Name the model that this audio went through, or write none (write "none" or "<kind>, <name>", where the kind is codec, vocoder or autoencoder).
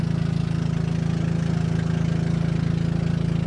none